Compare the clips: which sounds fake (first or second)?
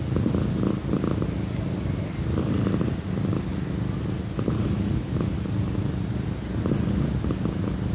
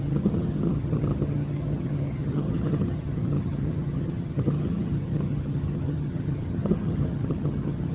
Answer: second